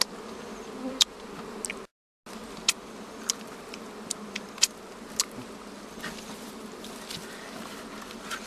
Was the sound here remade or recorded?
recorded